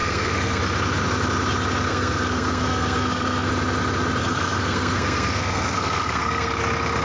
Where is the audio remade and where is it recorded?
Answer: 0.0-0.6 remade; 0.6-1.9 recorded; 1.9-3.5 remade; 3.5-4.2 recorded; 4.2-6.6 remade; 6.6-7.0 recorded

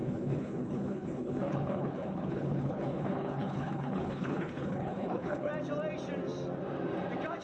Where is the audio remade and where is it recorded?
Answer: 0.0-5.5 remade; 5.5-7.4 recorded

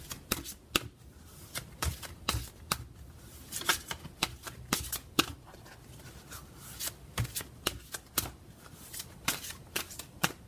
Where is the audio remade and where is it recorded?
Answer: 0.0-10.5 recorded

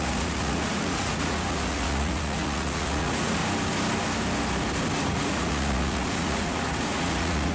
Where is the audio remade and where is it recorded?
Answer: 0.0-3.4 remade; 3.4-5.0 recorded; 5.0-7.5 remade

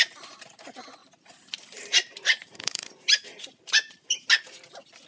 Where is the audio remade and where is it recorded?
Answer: 0.0-1.0 recorded; 1.0-4.1 remade; 4.1-5.1 recorded

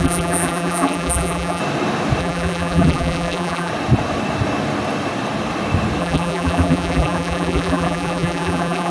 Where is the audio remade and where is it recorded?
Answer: 0.0-1.6 remade; 1.6-2.2 recorded; 2.2-3.7 remade; 3.7-6.0 recorded; 6.0-8.9 remade